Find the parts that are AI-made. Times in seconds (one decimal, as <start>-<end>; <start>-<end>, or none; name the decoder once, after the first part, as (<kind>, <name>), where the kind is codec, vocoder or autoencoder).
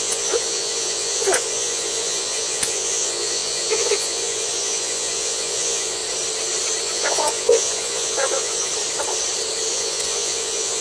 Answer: 0.0-6.0 (vocoder, Vocos); 6.8-8.7; 9.7-10.8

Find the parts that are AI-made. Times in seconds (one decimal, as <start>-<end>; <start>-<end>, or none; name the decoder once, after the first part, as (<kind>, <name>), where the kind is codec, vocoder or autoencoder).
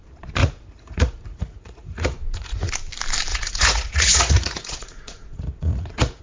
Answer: 0.4-2.7 (vocoder, Vocos); 3.3-6.2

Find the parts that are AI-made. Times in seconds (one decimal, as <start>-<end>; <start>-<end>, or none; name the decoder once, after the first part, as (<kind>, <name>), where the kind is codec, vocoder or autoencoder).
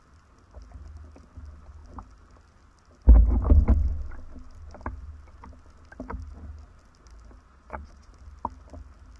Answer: 7.5-8.1 (vocoder, Vocos)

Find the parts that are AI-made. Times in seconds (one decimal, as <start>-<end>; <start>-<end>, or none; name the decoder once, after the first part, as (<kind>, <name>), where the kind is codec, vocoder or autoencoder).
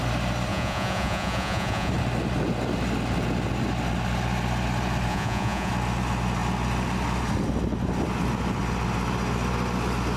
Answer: 0.5-1.9 (vocoder, Vocos); 5.1-5.7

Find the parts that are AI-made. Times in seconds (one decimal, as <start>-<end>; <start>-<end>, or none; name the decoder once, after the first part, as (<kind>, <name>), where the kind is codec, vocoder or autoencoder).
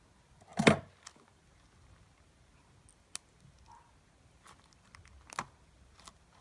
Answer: none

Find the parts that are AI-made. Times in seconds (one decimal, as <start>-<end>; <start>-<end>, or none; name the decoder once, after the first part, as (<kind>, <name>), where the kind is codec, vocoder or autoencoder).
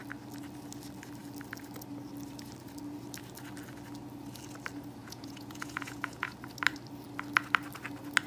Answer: 5.0-6.3 (vocoder, Vocos)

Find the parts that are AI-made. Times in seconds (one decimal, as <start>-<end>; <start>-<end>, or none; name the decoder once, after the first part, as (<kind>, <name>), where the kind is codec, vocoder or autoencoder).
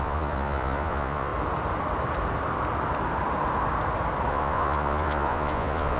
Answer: 0.0-1.3 (vocoder, Vocos); 4.3-6.0